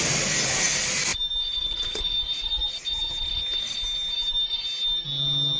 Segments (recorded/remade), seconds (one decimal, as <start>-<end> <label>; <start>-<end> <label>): 0.0-5.6 recorded